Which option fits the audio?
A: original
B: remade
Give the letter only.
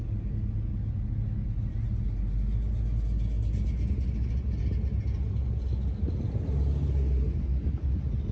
A